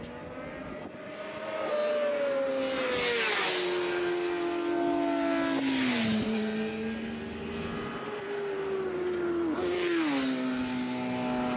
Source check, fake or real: real